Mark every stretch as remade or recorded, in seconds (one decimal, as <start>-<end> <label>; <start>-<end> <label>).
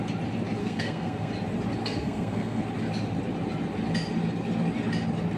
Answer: 0.0-0.6 recorded; 0.6-1.3 remade; 1.3-1.8 recorded; 1.8-2.6 remade; 2.6-5.4 recorded